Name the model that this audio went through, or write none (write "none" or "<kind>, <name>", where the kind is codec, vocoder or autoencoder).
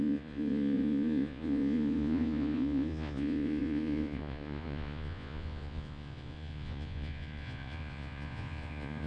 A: vocoder, Vocos